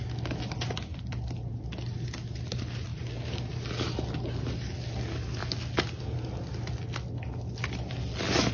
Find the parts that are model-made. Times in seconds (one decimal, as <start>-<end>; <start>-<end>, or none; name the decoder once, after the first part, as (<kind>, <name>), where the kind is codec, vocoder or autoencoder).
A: 0.9-1.6 (vocoder, BigVGAN v2); 2.9-3.5